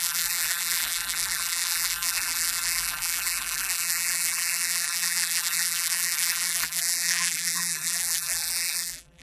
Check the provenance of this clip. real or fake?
fake